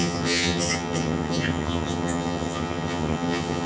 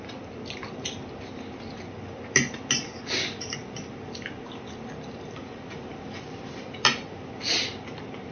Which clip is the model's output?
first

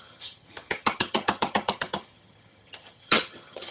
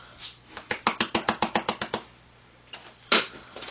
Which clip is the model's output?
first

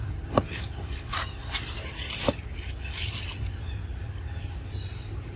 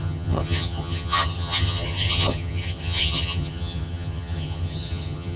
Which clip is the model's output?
second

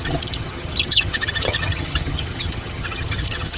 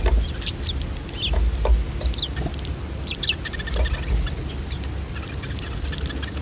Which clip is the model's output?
first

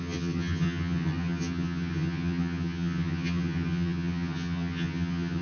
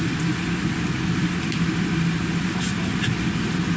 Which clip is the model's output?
first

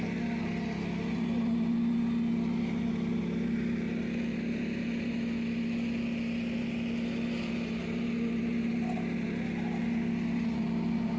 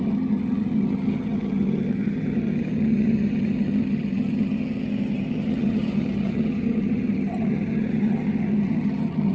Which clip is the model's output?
second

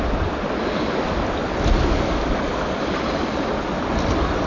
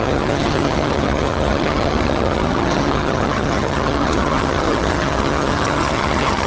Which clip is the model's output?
second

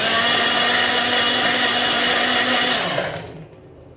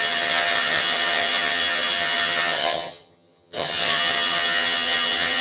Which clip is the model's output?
second